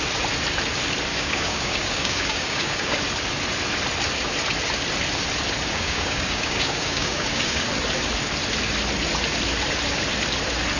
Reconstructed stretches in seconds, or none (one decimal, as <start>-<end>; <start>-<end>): 1.1-3.0; 5.7-7.7